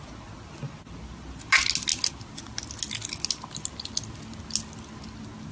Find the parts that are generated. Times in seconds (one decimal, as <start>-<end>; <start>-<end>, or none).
none